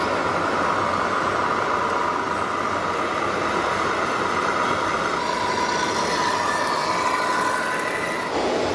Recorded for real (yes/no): yes